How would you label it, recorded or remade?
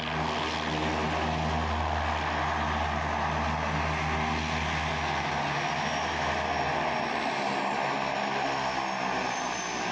recorded